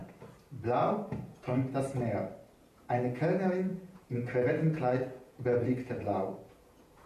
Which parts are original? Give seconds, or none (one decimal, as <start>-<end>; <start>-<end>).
0.0-1.1; 1.6-2.7